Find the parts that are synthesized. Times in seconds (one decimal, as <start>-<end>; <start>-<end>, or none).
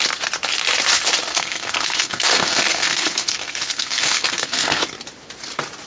1.3-4.8